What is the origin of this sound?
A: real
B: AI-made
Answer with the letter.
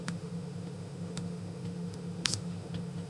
B